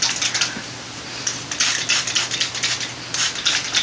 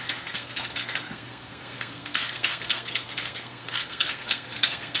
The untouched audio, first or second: first